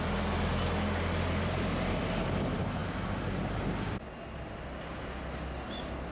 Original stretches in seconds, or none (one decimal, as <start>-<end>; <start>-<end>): 0.0-6.1